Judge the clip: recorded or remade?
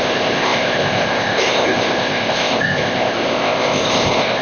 remade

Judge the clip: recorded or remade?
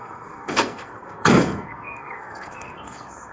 remade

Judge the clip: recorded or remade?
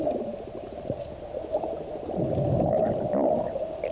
recorded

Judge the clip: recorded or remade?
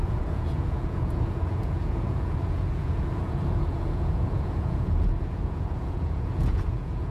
remade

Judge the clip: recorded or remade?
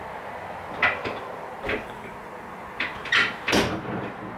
recorded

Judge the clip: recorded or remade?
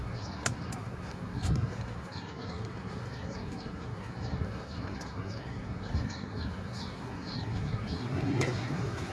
remade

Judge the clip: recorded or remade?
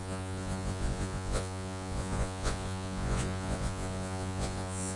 remade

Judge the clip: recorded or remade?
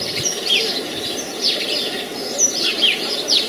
remade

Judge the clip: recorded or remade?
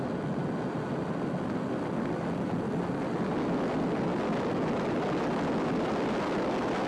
recorded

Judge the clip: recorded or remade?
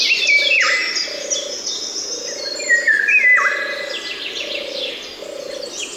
recorded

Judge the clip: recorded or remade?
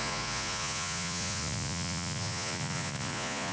remade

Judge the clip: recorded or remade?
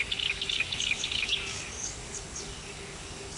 remade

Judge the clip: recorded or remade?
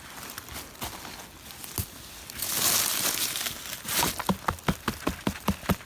recorded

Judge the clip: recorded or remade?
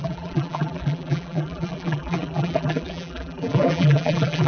remade